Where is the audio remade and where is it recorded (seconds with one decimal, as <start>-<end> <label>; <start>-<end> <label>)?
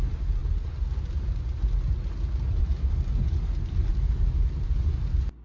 0.0-3.9 recorded; 3.9-4.9 remade; 4.9-5.4 recorded